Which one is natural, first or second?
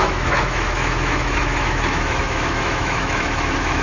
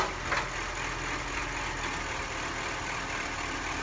second